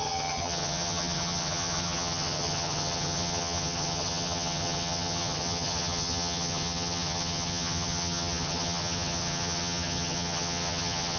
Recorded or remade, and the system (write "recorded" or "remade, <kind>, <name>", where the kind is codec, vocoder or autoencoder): remade, vocoder, HiFi-GAN